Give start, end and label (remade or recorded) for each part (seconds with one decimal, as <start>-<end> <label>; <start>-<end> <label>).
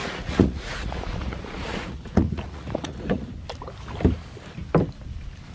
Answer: 0.0-3.3 remade; 3.3-5.5 recorded